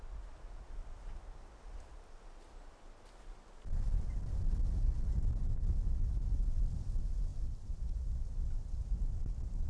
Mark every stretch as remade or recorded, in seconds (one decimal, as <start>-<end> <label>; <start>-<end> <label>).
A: 0.0-9.7 recorded